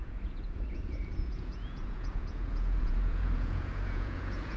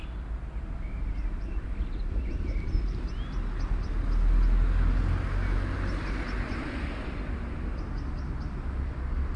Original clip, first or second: second